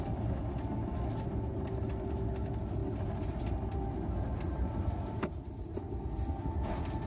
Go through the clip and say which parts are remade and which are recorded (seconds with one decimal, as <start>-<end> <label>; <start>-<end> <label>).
0.0-7.1 recorded